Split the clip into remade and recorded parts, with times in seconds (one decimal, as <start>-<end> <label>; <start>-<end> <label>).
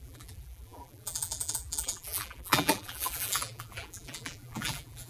0.0-5.1 remade